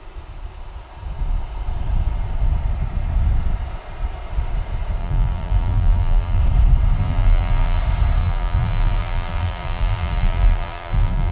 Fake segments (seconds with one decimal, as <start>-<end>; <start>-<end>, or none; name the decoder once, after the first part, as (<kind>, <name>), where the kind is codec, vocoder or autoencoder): 5.0-6.4 (vocoder, BigVGAN v2); 7.0-7.8; 8.2-11.3